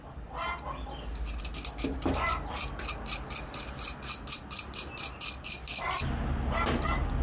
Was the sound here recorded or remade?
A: recorded